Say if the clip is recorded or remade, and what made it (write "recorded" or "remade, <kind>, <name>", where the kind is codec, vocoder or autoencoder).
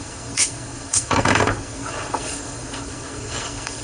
remade, codec, SNAC